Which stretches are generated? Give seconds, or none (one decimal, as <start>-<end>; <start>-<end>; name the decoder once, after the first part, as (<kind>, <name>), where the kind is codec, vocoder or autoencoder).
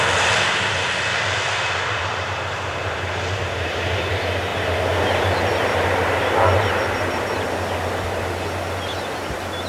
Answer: 2.0-4.1 (vocoder, BigVGAN v2)